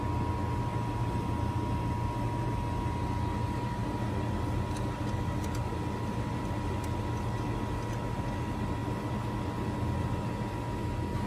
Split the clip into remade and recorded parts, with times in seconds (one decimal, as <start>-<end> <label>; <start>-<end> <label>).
0.0-0.7 recorded; 0.7-1.9 remade; 1.9-11.3 recorded